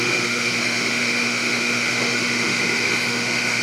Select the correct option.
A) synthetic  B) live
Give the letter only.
A